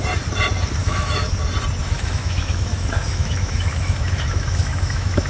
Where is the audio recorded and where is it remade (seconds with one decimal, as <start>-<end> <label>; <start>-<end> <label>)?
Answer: 0.0-0.8 recorded; 0.8-1.3 remade; 1.3-1.8 recorded; 1.8-5.3 remade